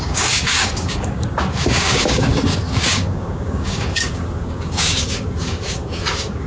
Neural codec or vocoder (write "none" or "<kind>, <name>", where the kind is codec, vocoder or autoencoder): codec, DAC